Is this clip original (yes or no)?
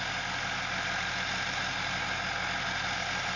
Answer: yes